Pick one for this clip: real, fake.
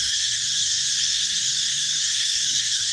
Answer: fake